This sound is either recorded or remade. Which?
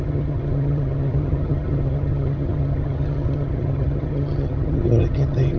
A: remade